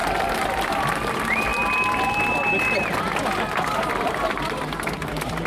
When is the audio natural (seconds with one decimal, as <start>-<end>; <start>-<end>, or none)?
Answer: 0.8-5.5